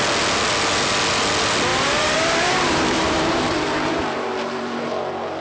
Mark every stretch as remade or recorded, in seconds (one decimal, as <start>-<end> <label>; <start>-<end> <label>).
0.0-1.7 recorded; 1.7-4.9 remade; 4.9-5.4 recorded